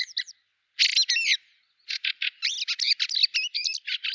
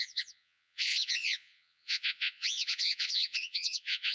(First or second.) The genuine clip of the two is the first